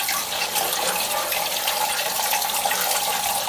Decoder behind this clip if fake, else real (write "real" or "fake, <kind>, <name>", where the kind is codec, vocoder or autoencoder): real